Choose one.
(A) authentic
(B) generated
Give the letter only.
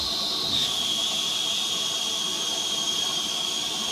A